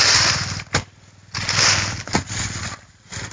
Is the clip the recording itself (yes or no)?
yes